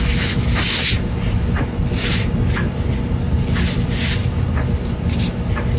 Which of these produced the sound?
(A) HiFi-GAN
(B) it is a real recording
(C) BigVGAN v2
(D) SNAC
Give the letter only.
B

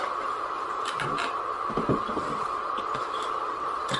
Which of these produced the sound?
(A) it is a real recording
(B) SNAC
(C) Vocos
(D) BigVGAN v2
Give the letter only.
A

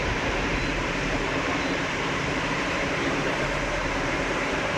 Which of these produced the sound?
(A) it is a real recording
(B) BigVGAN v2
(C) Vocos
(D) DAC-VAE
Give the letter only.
B